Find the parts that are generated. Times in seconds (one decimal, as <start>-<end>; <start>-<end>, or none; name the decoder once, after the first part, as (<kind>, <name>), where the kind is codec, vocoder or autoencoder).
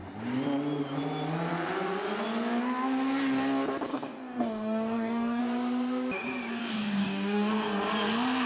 3.9-5.4 (codec, DAC); 6.6-7.5